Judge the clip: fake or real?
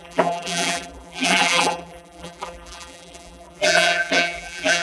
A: fake